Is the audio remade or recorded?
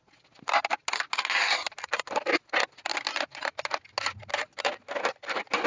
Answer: recorded